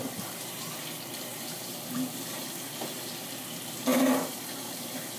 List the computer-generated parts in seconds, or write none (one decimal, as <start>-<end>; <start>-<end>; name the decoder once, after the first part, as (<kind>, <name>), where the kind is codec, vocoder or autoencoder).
none